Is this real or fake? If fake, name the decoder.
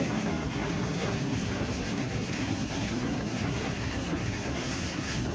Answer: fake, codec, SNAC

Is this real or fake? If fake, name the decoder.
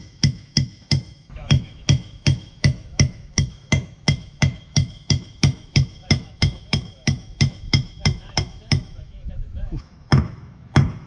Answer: fake, autoencoder, DAC-VAE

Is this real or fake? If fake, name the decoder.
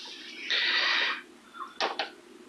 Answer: real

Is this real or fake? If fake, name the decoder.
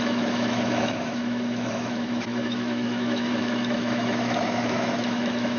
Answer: fake, autoencoder, DAC-VAE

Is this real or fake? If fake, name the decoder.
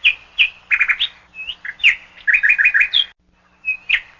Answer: real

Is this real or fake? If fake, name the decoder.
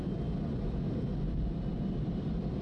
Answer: fake, vocoder, BigVGAN v2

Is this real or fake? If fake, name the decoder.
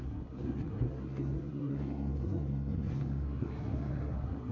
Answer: fake, codec, SNAC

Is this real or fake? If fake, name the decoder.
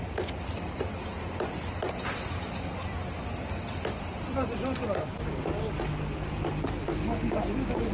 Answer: real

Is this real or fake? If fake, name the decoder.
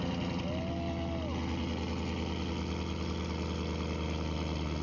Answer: real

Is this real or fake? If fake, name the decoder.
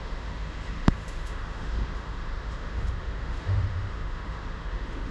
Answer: fake, autoencoder, DAC-VAE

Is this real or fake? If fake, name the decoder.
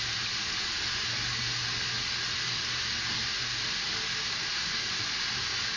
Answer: real